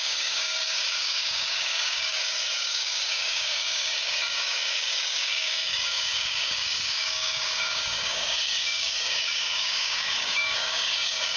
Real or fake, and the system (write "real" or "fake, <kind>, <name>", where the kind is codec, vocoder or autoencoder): fake, codec, DAC